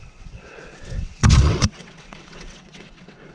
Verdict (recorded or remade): remade